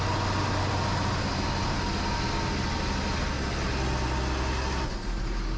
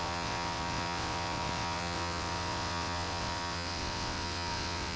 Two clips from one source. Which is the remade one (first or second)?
second